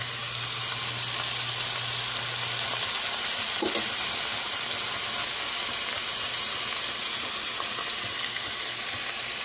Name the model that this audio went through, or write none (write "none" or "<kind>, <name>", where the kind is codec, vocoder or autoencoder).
none